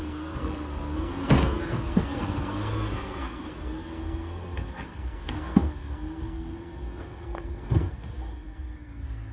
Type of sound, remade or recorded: remade